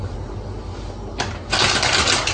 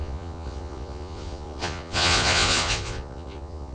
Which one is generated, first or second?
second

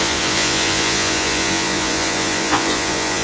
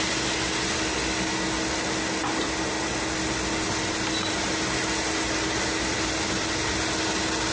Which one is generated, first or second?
first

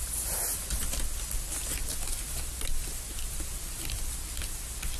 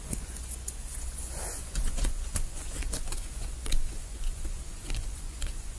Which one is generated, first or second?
second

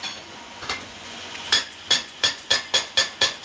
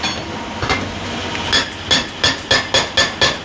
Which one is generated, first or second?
first